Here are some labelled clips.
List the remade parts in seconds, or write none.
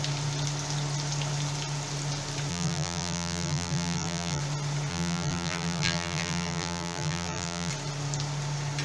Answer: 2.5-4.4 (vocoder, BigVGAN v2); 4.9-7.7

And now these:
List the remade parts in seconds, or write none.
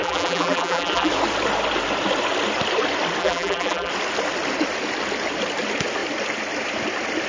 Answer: 0.0-1.1 (vocoder, BigVGAN v2); 3.2-3.9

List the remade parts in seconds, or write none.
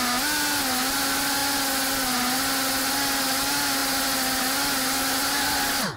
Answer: none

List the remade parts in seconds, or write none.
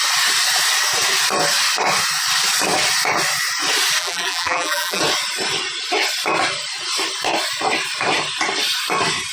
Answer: 4.0-5.0 (vocoder, BigVGAN v2)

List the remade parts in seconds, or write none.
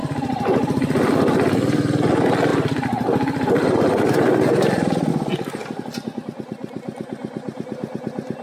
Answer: 0.0-2.1 (vocoder, BigVGAN v2); 2.5-5.1